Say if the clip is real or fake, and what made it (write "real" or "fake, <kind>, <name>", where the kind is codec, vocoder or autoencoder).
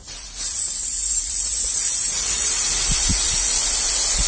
fake, vocoder, Vocos